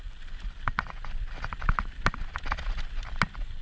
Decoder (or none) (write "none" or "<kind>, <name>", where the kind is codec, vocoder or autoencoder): none